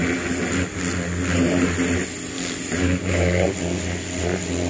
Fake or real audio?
real